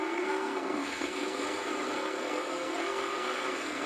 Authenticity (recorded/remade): remade